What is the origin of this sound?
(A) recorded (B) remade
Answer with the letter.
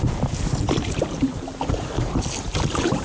B